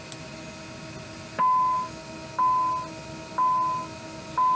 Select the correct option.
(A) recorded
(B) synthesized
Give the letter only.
A